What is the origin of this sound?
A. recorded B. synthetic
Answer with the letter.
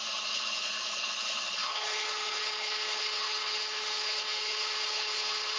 B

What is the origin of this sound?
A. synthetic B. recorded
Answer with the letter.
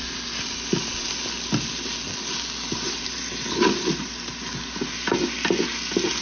B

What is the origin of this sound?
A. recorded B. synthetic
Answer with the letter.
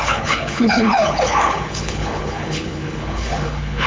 B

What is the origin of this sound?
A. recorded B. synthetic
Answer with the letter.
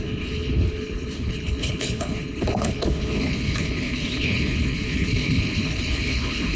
B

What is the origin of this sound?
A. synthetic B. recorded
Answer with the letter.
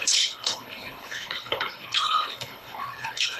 A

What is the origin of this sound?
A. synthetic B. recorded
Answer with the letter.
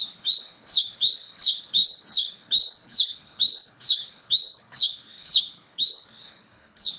A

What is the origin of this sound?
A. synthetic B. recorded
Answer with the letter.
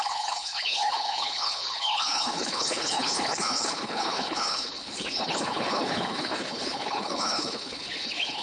A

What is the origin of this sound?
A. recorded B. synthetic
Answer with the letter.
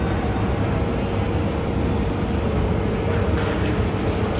A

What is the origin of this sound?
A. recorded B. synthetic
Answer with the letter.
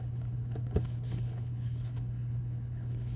B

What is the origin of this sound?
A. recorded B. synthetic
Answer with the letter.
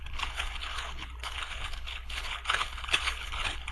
B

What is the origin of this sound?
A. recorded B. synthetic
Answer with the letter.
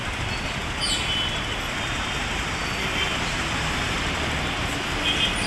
A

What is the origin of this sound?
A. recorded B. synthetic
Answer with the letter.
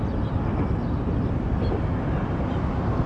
A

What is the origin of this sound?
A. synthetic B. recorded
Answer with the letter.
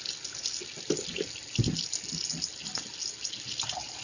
B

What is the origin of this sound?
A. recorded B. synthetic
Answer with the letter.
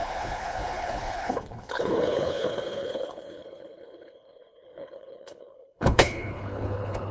B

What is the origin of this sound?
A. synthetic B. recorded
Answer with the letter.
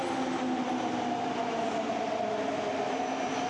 B